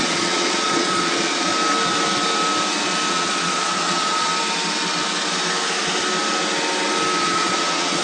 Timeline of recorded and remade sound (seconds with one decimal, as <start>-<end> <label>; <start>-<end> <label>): 0.0-1.5 remade; 1.5-3.1 recorded; 3.1-4.3 remade; 4.3-7.2 recorded; 7.2-8.0 remade